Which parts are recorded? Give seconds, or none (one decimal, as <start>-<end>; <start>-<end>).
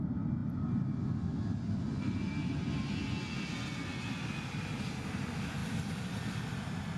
0.0-0.4; 3.5-7.0